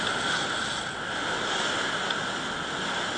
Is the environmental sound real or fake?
real